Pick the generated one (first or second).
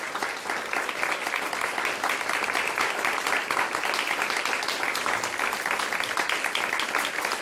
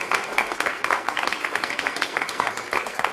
second